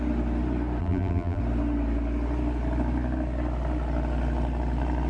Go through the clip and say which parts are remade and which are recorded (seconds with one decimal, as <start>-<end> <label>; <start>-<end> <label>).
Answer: 0.0-0.8 recorded; 0.8-1.4 remade; 1.4-5.1 recorded